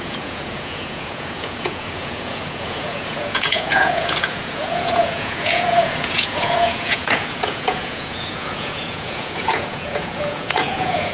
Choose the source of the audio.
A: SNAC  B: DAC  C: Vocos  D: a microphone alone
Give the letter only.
C